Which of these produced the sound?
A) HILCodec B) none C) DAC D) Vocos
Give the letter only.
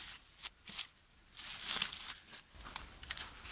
B